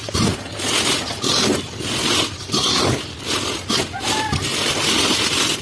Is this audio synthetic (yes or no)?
no